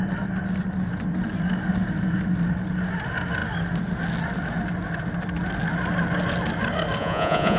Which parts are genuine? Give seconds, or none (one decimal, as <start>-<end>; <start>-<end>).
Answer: 0.0-7.0